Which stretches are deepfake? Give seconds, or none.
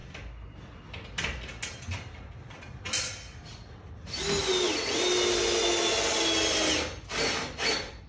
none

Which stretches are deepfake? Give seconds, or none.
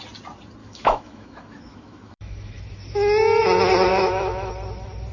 0.6-2.6 (autoencoder, DAC-VAE); 3.9-4.5